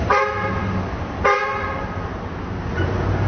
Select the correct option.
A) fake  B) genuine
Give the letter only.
B